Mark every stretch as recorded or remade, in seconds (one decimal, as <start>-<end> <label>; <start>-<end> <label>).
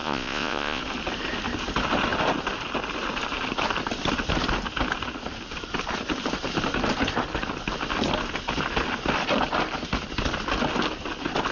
0.0-0.8 remade; 0.8-11.5 recorded